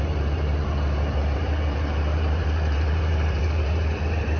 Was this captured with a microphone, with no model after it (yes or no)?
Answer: no